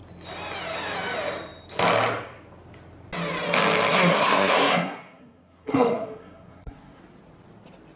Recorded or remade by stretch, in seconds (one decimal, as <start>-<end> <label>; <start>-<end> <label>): 0.0-3.9 recorded; 3.9-7.0 remade; 7.0-8.0 recorded